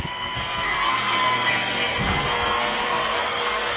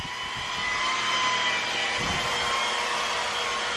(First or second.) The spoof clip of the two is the first